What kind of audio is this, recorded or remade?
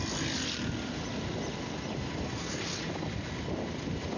recorded